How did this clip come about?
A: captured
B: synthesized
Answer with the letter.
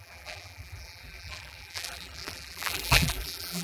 B